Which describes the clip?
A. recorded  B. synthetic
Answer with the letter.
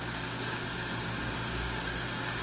B